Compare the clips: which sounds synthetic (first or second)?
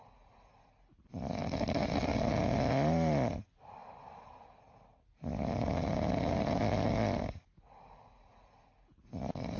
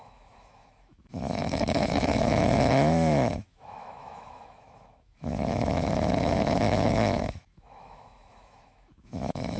second